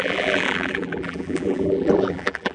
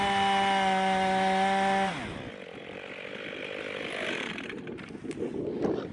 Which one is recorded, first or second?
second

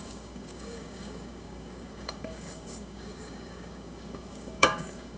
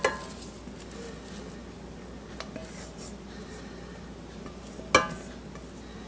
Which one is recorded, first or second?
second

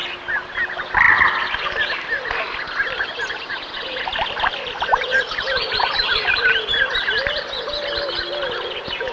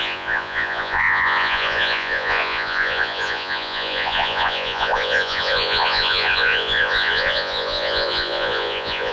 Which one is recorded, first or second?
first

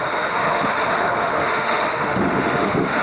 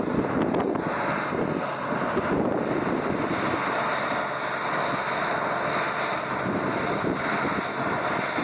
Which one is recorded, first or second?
second